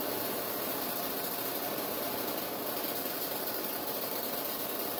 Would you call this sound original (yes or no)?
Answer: no